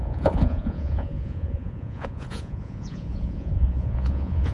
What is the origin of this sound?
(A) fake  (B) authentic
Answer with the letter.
A